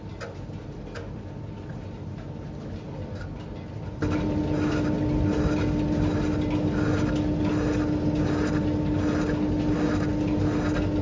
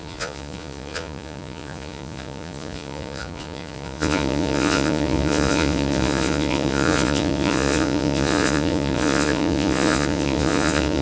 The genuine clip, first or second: first